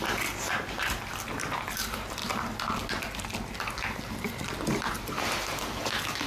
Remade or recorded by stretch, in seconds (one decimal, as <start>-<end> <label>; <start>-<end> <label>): 0.0-6.3 recorded